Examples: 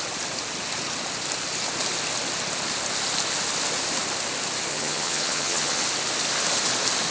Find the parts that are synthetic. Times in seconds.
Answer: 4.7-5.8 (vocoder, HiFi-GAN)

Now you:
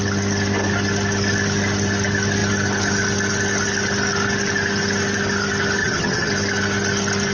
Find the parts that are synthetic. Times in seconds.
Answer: 5.8-6.3 (vocoder, HiFi-GAN)

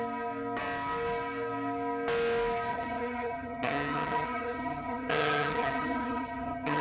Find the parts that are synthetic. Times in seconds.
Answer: 2.7-6.8 (vocoder, HiFi-GAN)

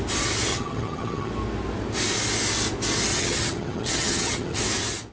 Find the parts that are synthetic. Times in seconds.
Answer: 0.5-1.3 (vocoder, HiFi-GAN); 3.1-4.6

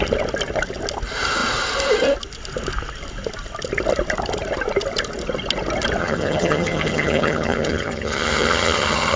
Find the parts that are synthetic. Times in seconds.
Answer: 6.0-9.2 (vocoder, HiFi-GAN)

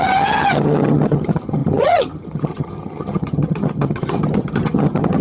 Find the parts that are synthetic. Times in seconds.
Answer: 0.0-5.2 (vocoder, HiFi-GAN)